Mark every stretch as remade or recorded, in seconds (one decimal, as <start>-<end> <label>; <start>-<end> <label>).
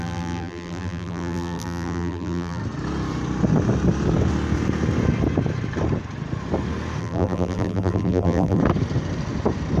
0.0-2.6 remade; 2.6-7.0 recorded; 7.0-8.6 remade; 8.6-9.8 recorded